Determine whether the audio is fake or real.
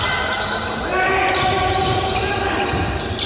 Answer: real